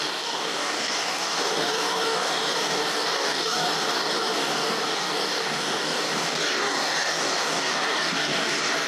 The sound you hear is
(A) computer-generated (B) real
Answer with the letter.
A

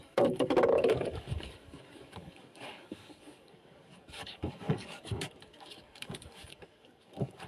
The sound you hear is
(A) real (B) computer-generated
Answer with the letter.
B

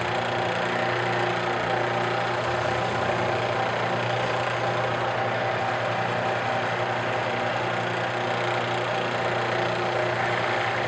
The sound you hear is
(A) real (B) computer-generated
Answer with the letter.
A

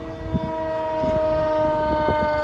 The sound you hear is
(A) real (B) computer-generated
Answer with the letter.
A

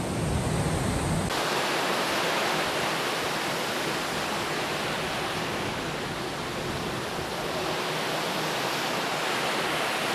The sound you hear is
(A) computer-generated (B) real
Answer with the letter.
B